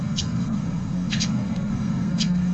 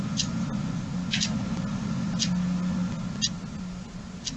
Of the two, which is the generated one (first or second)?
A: first